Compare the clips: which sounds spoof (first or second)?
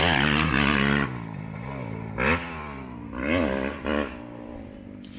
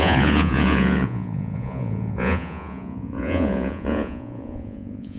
second